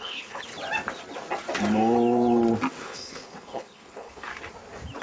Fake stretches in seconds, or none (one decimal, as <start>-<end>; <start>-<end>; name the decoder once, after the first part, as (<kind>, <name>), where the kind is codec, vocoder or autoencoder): 0.0-0.5 (codec, HILCodec); 2.8-4.3